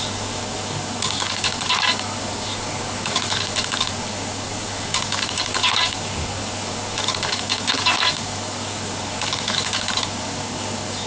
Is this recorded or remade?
remade